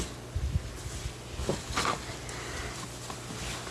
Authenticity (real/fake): real